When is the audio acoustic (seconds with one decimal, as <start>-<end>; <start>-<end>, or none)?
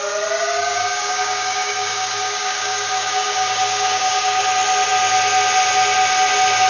0.0-0.4; 4.4-6.7